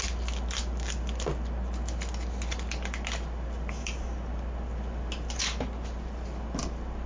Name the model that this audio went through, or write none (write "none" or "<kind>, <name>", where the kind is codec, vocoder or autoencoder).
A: none